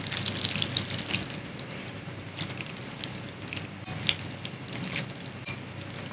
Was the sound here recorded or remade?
recorded